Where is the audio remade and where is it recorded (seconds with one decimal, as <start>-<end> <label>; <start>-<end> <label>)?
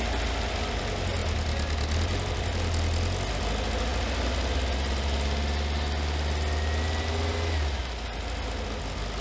0.0-9.2 recorded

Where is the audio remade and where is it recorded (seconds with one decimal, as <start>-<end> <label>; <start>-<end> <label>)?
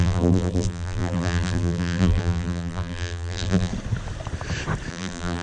0.0-3.7 remade; 3.7-4.9 recorded; 4.9-5.4 remade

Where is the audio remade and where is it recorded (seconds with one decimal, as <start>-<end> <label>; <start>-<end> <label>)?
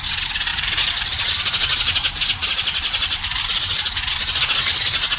0.0-0.5 recorded; 0.5-1.4 remade; 1.4-2.4 recorded; 2.4-4.0 remade; 4.0-5.2 recorded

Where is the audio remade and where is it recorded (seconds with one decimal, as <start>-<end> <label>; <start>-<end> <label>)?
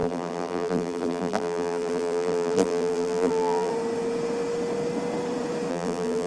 0.0-3.7 remade; 3.7-5.7 recorded; 5.7-6.3 remade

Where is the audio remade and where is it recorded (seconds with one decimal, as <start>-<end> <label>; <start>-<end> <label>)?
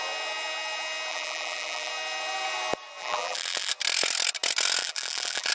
0.0-1.1 recorded; 1.1-1.9 remade; 1.9-3.0 recorded; 3.0-3.7 remade; 3.7-4.8 recorded; 4.8-5.5 remade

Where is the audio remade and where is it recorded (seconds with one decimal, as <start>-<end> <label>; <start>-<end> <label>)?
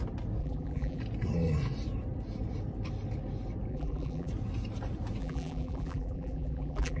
0.0-0.4 recorded; 0.4-1.0 remade; 1.0-3.7 recorded; 3.7-4.3 remade; 4.3-5.2 recorded; 5.2-7.0 remade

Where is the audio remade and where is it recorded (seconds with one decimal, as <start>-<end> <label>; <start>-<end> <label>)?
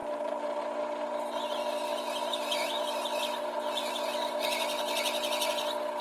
0.0-0.6 remade; 0.6-6.0 recorded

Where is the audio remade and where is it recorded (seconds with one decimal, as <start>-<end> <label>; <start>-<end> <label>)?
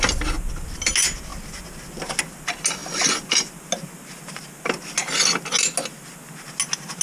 0.0-7.0 recorded